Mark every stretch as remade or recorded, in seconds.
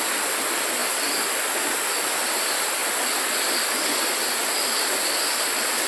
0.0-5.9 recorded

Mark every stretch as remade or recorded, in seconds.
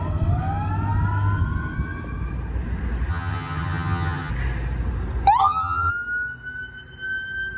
0.0-3.1 recorded; 3.1-4.3 remade; 4.3-5.4 recorded; 5.4-5.9 remade; 5.9-7.6 recorded